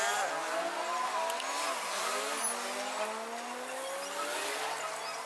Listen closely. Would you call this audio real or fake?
real